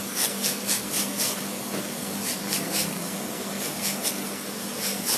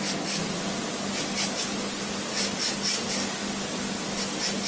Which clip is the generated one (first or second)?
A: first